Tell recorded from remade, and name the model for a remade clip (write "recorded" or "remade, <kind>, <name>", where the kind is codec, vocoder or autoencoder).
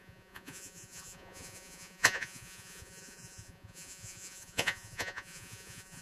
remade, vocoder, Vocos